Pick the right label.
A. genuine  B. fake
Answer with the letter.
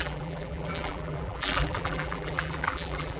B